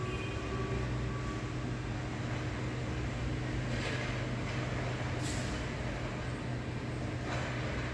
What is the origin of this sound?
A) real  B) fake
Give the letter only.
A